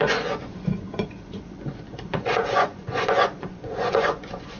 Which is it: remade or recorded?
remade